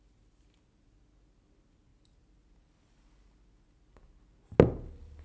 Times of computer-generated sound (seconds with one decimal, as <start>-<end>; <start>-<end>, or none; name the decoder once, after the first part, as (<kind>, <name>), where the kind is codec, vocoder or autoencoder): none